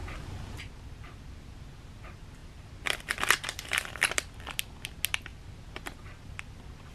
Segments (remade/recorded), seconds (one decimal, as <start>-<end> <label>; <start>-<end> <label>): 0.0-0.6 remade; 0.6-2.4 recorded; 2.4-4.5 remade; 4.5-6.9 recorded